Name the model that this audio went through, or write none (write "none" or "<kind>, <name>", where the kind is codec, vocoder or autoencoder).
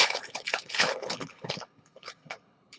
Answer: codec, HILCodec